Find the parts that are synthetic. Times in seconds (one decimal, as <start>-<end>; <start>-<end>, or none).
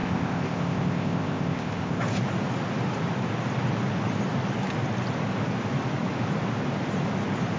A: 0.0-2.0